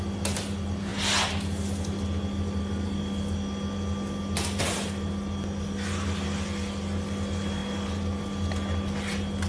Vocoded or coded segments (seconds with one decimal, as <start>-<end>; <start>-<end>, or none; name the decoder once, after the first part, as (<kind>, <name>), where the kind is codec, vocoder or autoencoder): none